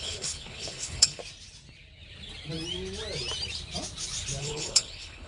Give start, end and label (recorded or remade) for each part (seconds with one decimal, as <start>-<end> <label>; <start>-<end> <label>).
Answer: 0.0-1.2 remade; 1.2-4.4 recorded; 4.4-5.3 remade